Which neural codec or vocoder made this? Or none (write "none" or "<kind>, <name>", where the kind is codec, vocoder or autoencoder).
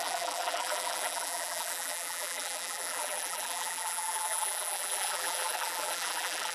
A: vocoder, BigVGAN v2